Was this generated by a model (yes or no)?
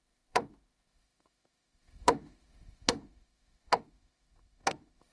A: yes